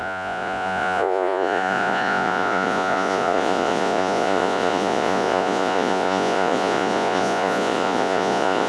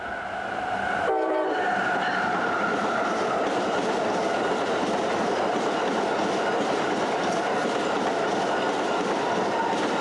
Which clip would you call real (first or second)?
second